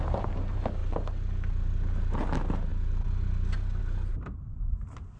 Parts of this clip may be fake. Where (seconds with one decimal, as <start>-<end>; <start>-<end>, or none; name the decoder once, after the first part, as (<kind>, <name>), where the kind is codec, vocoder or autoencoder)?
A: none